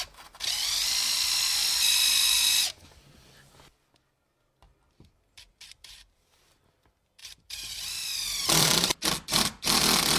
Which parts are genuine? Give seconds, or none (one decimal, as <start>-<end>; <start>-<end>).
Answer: none